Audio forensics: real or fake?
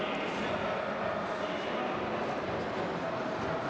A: real